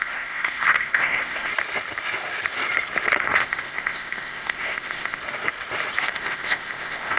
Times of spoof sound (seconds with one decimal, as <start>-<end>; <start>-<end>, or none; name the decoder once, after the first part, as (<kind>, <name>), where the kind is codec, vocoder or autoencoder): 0.0-1.5 (codec, ZipCodec); 3.2-5.2; 6.0-7.2